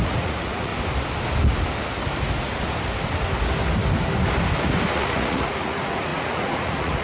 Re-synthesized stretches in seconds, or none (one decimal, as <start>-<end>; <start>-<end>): 0.0-0.7; 4.9-7.0